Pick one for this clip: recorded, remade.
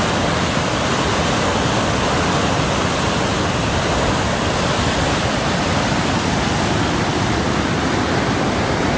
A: remade